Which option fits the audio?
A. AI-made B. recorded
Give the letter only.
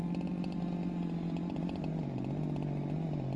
B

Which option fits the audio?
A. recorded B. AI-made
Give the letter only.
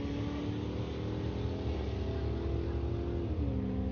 A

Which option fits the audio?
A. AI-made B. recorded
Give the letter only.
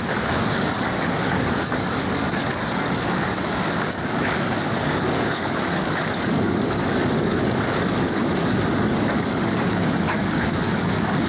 A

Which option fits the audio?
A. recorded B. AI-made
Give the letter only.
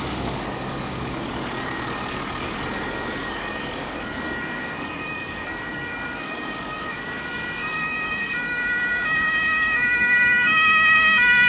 B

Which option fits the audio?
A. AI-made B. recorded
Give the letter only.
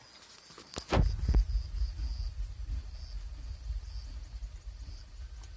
B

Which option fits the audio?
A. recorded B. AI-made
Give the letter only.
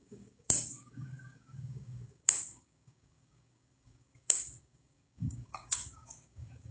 B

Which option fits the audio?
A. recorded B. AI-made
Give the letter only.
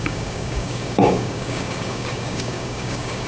B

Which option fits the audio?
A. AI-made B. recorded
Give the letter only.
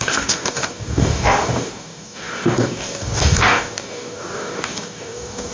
A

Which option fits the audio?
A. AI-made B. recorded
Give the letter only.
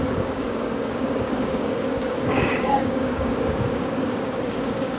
A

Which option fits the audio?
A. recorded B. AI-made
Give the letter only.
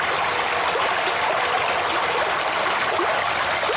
A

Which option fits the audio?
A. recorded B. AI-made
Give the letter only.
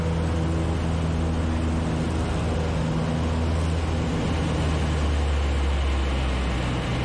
A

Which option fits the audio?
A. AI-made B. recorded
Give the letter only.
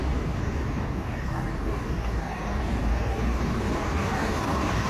A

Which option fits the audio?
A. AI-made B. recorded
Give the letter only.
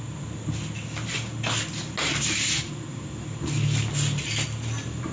B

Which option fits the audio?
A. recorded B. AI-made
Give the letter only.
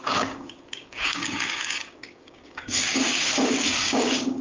B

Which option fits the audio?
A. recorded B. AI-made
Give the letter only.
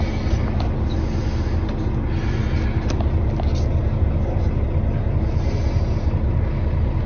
A